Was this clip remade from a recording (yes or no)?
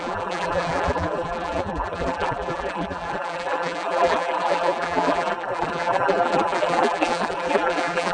yes